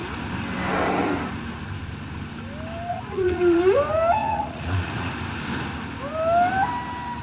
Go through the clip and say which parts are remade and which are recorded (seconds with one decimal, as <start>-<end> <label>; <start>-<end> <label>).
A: 0.0-2.9 recorded; 2.9-3.6 remade; 3.6-4.2 recorded; 4.2-5.1 remade; 5.1-7.2 recorded